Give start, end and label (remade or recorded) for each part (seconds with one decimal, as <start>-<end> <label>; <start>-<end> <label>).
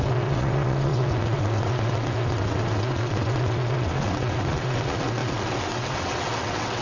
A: 0.0-6.8 remade